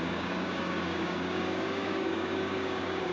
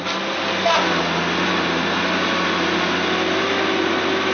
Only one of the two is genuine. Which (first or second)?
second